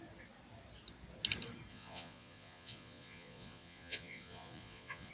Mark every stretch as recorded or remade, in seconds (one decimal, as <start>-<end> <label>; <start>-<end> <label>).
0.0-1.7 recorded; 1.7-5.1 remade